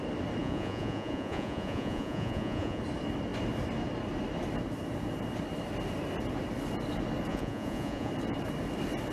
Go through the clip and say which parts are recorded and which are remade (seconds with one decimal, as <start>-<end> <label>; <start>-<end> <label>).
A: 0.0-0.4 recorded; 0.4-2.8 remade; 2.8-7.3 recorded; 7.3-8.1 remade; 8.1-9.1 recorded